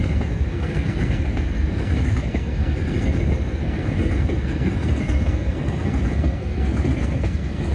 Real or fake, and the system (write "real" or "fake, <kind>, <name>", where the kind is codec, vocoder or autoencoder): fake, codec, SNAC